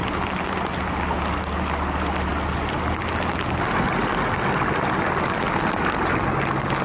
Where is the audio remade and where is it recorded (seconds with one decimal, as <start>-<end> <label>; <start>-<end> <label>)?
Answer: 0.0-6.8 recorded